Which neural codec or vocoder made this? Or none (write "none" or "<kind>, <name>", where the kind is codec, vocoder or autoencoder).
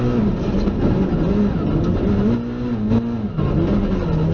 none